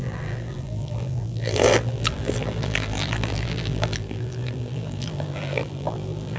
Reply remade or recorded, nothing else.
remade